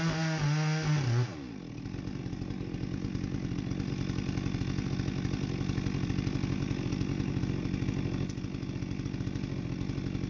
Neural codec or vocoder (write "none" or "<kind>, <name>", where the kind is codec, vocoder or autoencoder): none